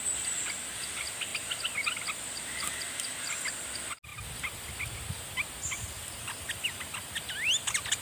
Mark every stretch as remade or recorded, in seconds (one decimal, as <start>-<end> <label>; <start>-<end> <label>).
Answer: 0.0-8.0 recorded